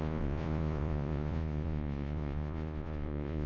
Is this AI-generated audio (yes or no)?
yes